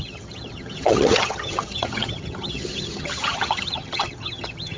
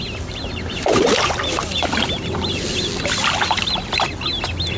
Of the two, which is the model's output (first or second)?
first